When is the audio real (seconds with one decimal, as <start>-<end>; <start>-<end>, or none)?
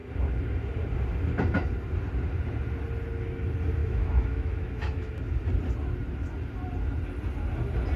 0.0-3.8; 5.1-8.0